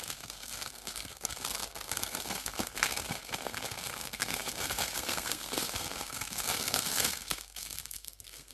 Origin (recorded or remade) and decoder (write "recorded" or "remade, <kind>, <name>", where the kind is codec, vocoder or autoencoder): remade, codec, SNAC